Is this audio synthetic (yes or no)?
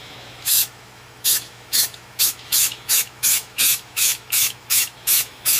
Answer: yes